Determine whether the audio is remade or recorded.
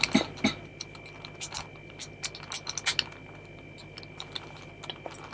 recorded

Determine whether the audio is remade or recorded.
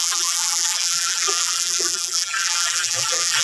remade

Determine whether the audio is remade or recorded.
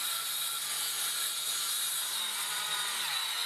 recorded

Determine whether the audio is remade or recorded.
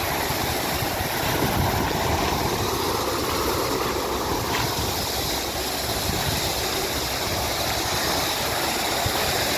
recorded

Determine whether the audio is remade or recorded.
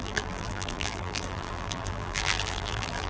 remade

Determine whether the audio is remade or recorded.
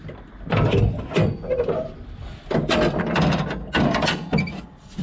recorded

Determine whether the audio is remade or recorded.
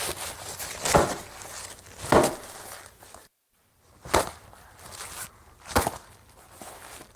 recorded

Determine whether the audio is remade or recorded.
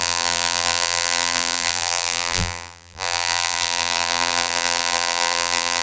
remade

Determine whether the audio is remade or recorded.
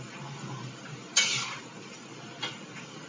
recorded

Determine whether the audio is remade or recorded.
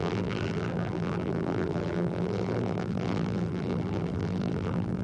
remade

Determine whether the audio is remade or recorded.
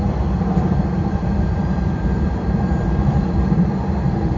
remade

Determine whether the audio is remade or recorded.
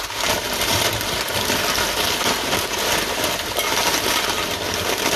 remade